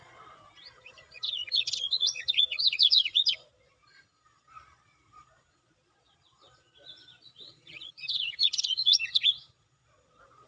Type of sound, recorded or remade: remade